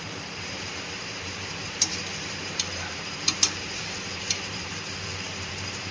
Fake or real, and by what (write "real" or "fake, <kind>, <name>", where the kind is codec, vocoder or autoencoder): fake, vocoder, BigVGAN v2